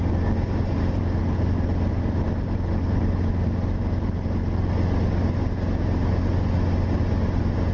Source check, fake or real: real